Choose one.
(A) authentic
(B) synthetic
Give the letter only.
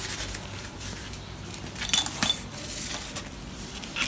A